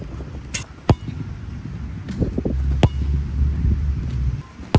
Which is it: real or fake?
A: real